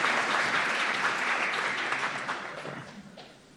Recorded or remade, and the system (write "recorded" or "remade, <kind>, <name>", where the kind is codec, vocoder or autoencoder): remade, vocoder, BigVGAN v2